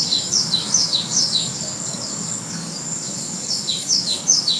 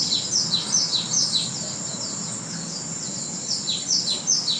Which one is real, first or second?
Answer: second